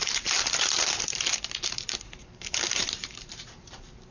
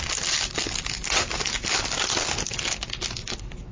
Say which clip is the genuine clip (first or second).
second